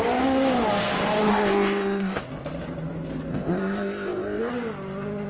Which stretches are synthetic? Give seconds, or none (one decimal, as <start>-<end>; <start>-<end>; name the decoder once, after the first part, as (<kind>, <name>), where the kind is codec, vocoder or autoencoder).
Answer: 1.3-2.2 (codec, ZipCodec); 3.3-4.5